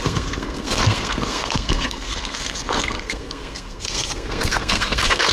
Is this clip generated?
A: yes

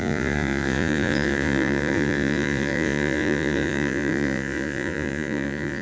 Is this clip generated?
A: yes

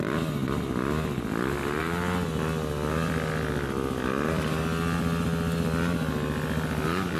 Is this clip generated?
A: no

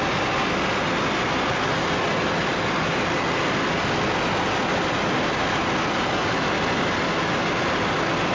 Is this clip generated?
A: no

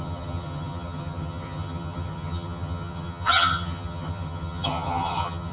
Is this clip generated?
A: yes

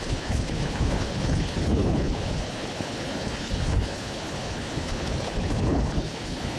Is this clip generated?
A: yes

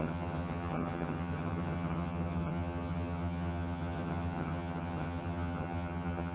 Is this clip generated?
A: yes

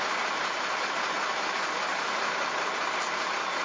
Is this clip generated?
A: no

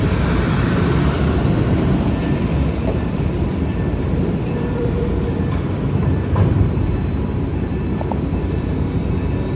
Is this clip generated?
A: yes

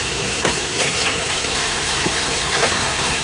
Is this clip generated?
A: yes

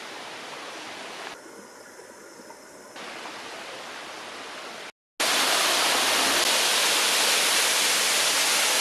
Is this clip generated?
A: no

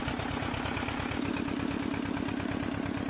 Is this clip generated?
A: no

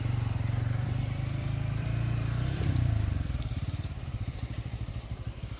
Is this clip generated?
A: yes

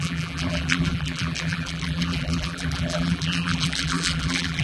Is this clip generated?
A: yes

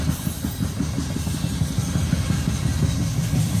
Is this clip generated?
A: no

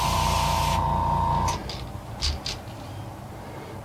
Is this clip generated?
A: no